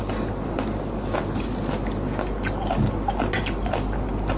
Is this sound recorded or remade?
recorded